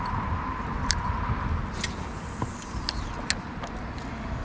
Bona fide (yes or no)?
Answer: yes